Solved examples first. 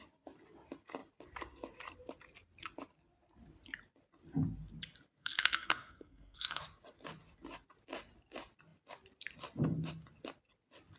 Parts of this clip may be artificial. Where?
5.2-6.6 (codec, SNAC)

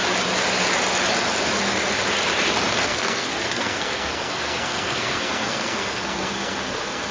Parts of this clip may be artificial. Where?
2.8-7.1 (codec, SNAC)

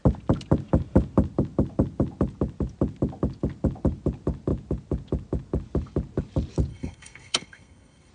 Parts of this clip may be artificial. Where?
6.7-8.1 (codec, SNAC)

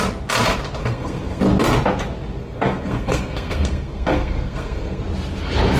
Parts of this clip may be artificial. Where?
0.8-1.4 (codec, SNAC); 2.4-5.0

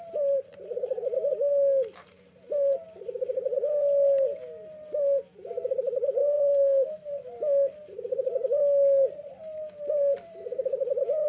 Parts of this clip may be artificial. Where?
6.2-7.1 (codec, SNAC)

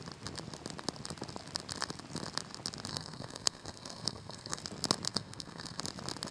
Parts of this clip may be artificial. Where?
2.9-4.6 (codec, SNAC); 5.1-5.8

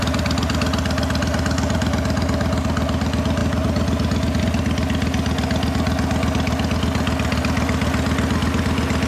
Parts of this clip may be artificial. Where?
none

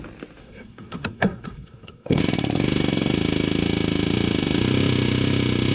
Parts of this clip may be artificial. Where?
0.4-2.2 (codec, SNAC)